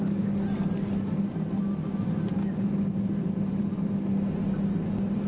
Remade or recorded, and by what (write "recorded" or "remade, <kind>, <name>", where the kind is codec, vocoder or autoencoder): recorded